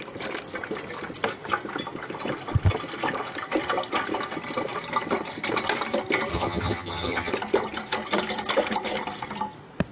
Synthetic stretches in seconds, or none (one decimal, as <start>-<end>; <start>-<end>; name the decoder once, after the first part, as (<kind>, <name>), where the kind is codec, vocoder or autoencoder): 6.3-7.3 (vocoder, HiFi-GAN)